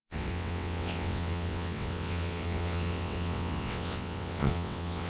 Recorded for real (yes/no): no